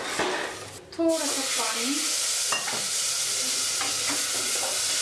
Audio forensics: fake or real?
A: real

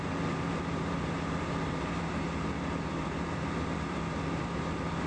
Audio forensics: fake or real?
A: fake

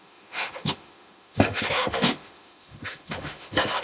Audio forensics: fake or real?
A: fake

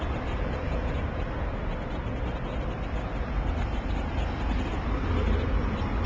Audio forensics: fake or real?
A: real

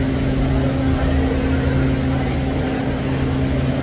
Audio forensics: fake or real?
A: real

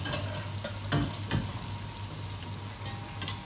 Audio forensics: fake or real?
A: real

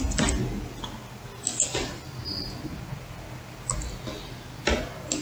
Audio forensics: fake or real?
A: real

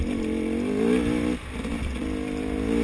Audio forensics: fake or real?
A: real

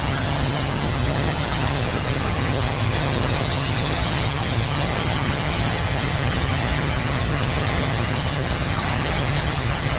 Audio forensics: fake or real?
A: fake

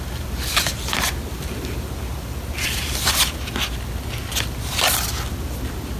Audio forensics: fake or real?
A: real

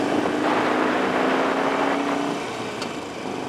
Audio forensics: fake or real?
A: real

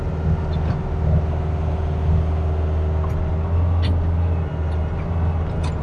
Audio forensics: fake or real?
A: real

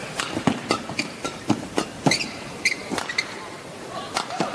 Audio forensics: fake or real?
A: fake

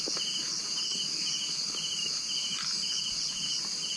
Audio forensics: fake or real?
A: real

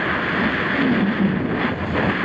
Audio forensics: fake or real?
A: real